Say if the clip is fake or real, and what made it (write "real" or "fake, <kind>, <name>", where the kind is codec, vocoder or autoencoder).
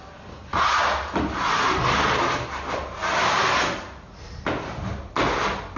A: real